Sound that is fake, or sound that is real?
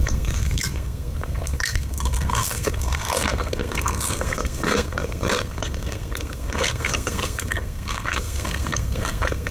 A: fake